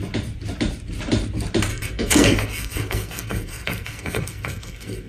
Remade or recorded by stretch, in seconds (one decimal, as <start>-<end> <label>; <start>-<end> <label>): 0.0-1.7 recorded; 1.7-5.1 remade

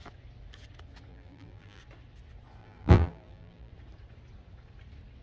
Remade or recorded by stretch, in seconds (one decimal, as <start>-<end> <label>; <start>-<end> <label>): 0.0-1.1 recorded; 1.1-1.8 remade; 1.8-2.6 recorded; 2.6-3.7 remade; 3.7-5.2 recorded

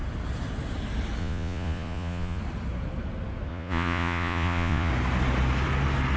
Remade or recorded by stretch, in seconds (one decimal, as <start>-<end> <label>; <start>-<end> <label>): 0.0-1.2 recorded; 1.2-2.4 remade; 2.4-3.5 recorded; 3.5-4.9 remade; 4.9-6.2 recorded

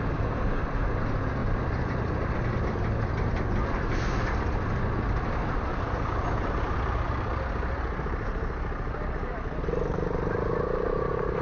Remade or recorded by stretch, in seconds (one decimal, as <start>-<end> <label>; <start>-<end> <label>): 0.0-11.4 recorded

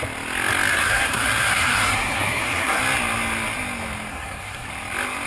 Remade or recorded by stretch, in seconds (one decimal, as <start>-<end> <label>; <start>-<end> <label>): 0.0-0.7 recorded; 0.7-2.8 remade; 2.8-4.1 recorded; 4.1-4.7 remade; 4.7-5.3 recorded

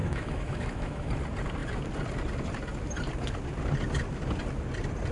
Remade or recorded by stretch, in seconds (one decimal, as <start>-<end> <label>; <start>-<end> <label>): 0.0-1.1 remade; 1.1-5.1 recorded